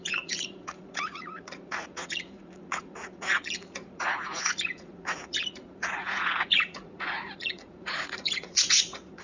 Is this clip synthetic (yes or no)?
yes